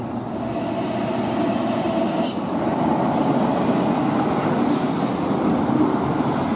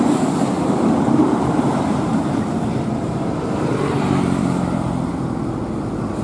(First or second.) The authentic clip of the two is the first